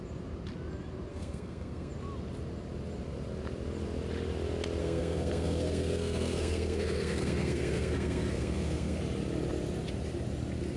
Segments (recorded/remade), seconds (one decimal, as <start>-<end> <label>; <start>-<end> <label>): 0.0-1.1 recorded; 1.1-1.9 remade; 1.9-4.8 recorded; 4.8-9.0 remade; 9.0-10.8 recorded